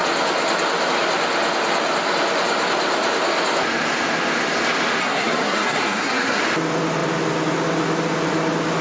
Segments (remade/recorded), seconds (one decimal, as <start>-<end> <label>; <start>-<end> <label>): 0.0-5.0 recorded; 5.0-6.4 remade; 6.4-8.8 recorded